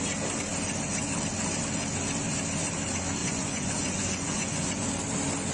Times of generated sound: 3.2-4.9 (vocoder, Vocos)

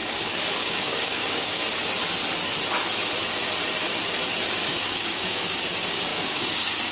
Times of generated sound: 0.6-1.6 (codec, DAC); 4.5-6.9

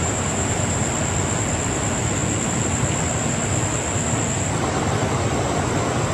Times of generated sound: 0.0-0.8 (vocoder, BigVGAN v2)

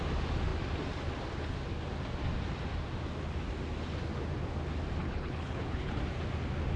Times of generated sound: 5.0-6.0 (codec, HILCodec)